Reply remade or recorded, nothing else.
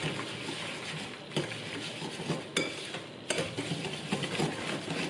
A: recorded